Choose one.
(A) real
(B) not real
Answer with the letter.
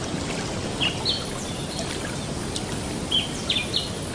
A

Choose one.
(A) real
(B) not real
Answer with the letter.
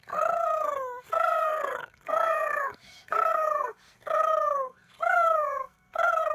B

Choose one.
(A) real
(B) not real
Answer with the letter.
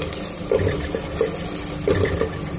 A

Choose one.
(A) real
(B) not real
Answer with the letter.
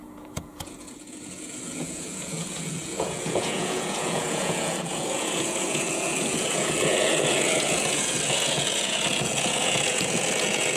B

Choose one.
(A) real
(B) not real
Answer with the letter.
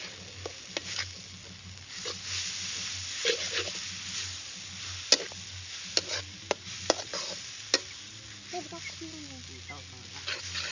A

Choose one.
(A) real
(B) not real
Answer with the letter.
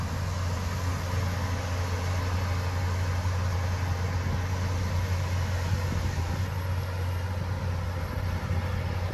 A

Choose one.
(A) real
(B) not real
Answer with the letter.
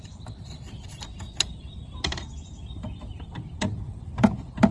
B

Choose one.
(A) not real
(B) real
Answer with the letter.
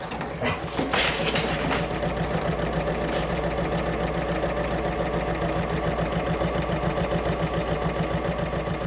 B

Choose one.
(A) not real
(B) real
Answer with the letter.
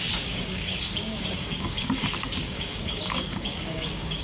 A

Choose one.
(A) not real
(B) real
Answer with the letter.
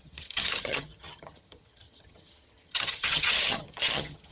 A